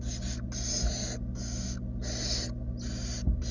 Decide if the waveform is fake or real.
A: real